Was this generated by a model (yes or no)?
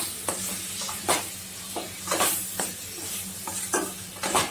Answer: no